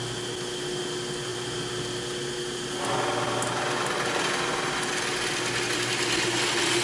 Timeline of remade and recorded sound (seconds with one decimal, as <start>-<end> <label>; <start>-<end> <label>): 0.0-6.8 recorded